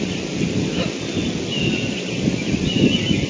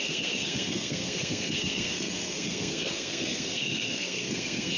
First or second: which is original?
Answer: first